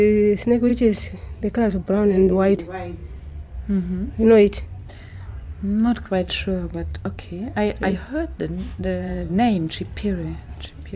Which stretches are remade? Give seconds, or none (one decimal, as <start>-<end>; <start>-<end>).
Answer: 0.7-2.6; 3.0-7.9; 8.7-9.7